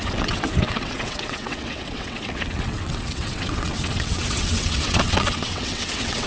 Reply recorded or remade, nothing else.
remade